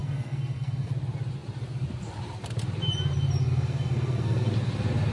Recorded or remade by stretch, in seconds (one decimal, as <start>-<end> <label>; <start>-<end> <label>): 0.0-0.9 remade; 0.9-3.4 recorded; 3.4-4.5 remade; 4.5-5.1 recorded